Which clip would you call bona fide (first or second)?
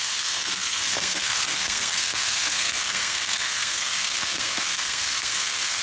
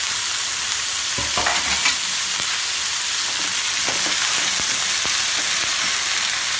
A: second